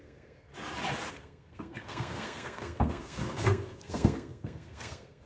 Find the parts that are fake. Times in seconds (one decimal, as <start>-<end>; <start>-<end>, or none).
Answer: 0.0-0.5; 1.1-5.3